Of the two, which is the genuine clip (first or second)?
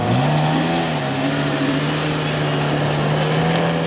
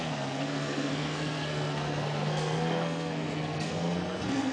first